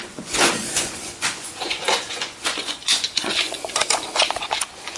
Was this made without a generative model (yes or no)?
no